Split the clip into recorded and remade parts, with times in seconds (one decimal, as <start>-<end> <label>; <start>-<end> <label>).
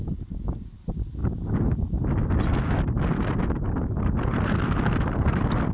0.0-5.7 recorded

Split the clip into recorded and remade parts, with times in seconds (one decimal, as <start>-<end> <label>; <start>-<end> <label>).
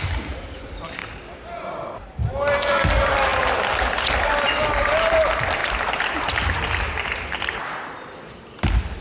0.0-1.0 recorded; 1.0-2.3 remade; 2.3-5.6 recorded; 5.6-9.0 remade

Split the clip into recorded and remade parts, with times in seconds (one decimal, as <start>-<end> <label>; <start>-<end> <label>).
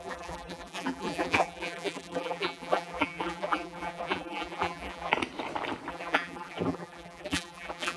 0.0-5.1 remade; 5.1-5.9 recorded; 5.9-8.0 remade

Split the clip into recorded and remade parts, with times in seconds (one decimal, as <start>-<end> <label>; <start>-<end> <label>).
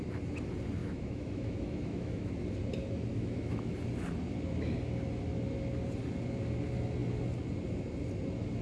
0.0-0.8 recorded; 0.8-2.3 remade; 2.3-3.1 recorded; 3.1-3.7 remade; 3.7-8.6 recorded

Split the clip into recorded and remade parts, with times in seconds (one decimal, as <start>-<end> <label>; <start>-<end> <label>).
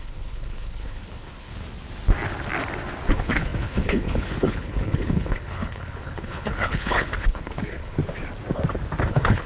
0.0-1.5 remade; 1.5-3.1 recorded; 3.1-8.0 remade; 8.0-9.1 recorded; 9.1-9.5 remade